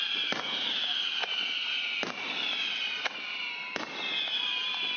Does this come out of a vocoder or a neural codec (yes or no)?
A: no